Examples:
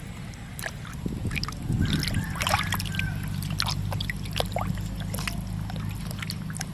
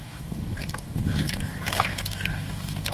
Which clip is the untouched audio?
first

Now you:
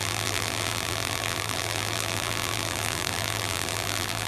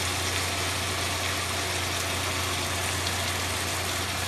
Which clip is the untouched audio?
second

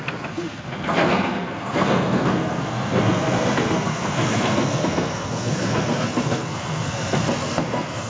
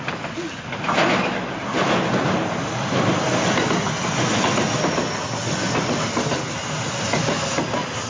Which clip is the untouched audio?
second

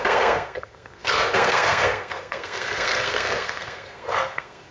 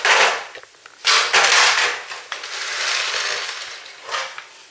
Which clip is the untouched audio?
second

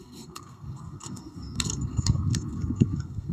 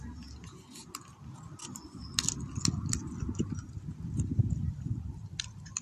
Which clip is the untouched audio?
second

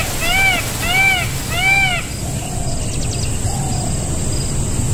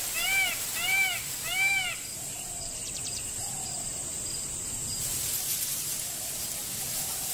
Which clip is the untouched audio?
first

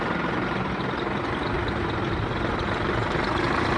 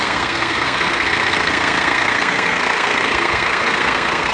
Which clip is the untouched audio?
first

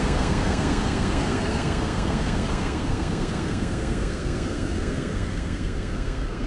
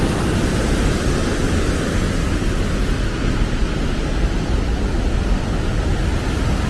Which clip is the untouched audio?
second